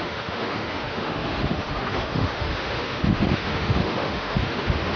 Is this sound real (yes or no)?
no